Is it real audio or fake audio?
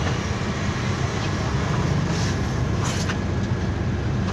real